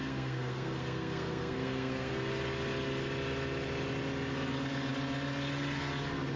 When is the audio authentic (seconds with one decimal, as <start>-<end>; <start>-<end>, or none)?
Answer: 2.1-6.4